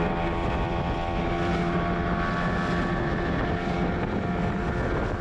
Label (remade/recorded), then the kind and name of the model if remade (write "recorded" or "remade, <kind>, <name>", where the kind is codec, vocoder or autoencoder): recorded